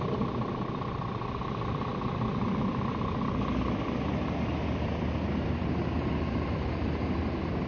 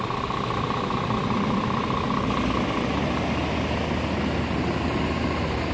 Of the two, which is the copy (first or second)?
first